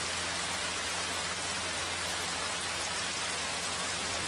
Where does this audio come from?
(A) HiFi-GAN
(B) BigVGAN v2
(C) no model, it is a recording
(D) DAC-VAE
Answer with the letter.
C